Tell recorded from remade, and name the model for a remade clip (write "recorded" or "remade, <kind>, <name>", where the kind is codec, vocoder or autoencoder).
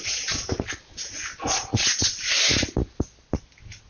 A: recorded